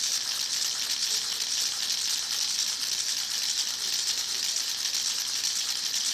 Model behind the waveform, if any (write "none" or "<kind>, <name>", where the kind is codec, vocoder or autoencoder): none